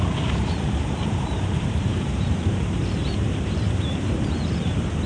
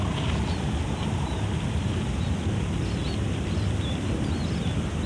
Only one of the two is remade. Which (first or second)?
first